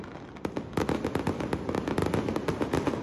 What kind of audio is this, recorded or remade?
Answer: recorded